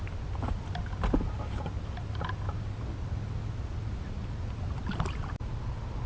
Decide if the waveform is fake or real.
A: real